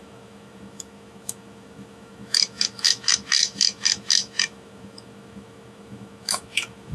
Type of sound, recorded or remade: remade